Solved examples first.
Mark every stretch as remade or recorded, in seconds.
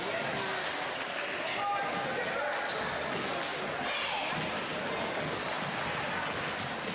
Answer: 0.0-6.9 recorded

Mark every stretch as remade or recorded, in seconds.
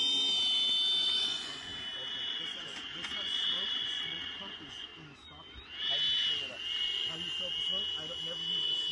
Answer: 0.0-1.0 recorded; 1.0-1.7 remade; 1.7-2.3 recorded; 2.3-4.9 remade; 4.9-8.9 recorded